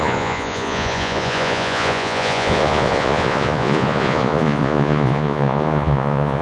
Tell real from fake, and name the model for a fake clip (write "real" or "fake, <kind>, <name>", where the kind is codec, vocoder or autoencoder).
fake, vocoder, Vocos